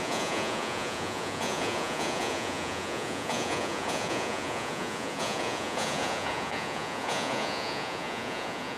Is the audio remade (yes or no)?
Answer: yes